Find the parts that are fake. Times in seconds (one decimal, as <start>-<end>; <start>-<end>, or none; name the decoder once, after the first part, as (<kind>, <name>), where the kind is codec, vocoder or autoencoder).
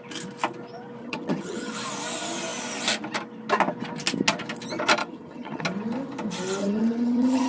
1.0-1.7 (vocoder, HiFi-GAN); 5.0-5.6; 6.6-7.5